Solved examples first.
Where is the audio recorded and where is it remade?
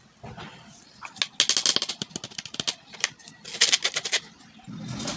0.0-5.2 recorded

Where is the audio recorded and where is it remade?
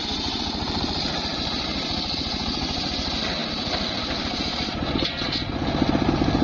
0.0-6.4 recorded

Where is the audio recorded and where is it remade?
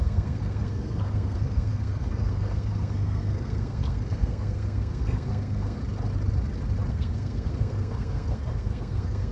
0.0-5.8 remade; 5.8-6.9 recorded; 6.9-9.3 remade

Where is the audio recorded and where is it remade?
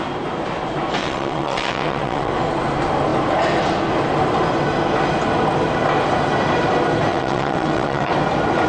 0.0-1.0 recorded; 1.0-2.3 remade; 2.3-7.1 recorded; 7.1-8.1 remade; 8.1-8.7 recorded